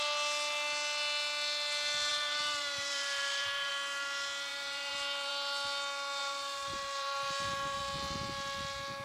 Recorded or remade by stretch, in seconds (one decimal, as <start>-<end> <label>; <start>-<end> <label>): 0.0-2.1 recorded; 2.1-3.7 remade; 3.7-4.5 recorded; 4.5-5.3 remade; 5.3-6.2 recorded; 6.2-7.8 remade; 7.8-9.0 recorded